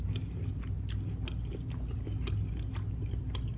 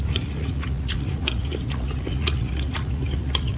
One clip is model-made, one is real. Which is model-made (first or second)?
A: second